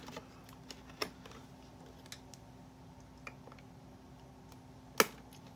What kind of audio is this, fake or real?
real